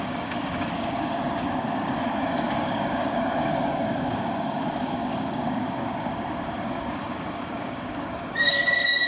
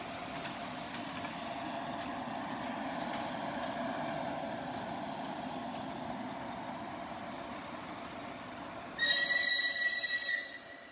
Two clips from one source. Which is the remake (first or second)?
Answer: first